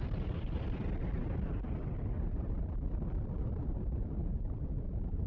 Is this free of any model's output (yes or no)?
yes